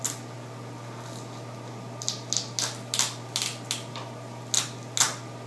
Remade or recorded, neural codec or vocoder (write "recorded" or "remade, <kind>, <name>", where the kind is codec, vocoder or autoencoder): recorded